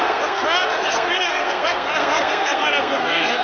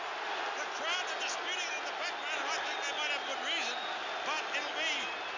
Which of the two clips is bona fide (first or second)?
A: second